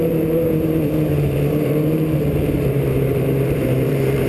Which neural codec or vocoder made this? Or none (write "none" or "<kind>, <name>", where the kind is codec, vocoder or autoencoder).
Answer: vocoder, BigVGAN v2